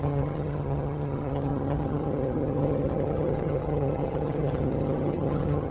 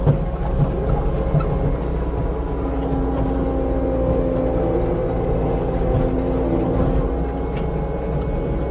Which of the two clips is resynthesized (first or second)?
first